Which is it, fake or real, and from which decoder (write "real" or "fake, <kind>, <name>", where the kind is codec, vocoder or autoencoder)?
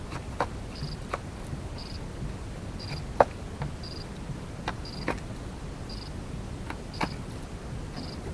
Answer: real